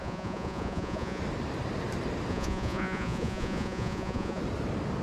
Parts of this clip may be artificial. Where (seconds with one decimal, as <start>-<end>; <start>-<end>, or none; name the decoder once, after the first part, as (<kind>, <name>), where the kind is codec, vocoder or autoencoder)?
0.0-1.2 (vocoder, Vocos); 2.3-4.4